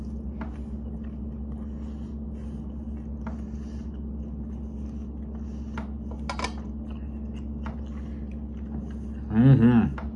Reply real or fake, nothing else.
real